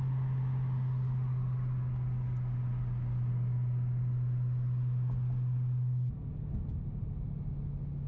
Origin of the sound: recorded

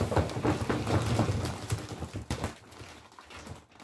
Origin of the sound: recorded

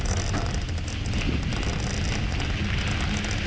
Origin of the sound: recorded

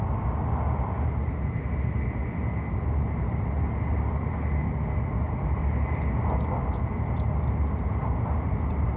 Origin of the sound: recorded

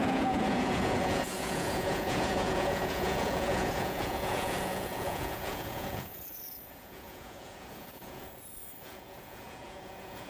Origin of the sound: remade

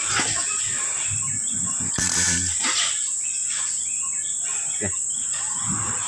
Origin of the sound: recorded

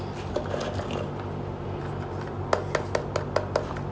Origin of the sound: recorded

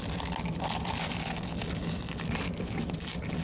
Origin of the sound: recorded